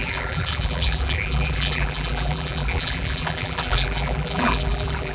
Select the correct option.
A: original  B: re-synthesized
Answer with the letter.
B